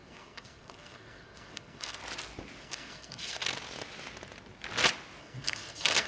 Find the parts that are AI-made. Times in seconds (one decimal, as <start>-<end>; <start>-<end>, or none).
0.0-2.0; 2.6-3.4; 5.2-6.1